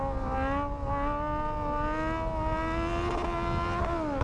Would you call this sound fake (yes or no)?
no